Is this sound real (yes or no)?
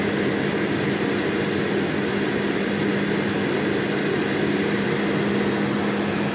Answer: yes